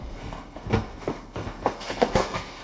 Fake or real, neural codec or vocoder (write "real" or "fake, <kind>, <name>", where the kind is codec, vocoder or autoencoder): fake, codec, SNAC